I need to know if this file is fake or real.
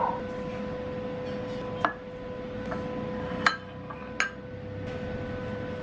real